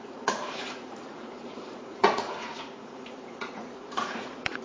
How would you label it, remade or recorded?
remade